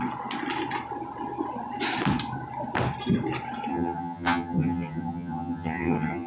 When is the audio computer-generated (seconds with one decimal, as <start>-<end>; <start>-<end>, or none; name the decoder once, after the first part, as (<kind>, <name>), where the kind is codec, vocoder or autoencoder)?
3.7-6.3 (vocoder, HiFi-GAN)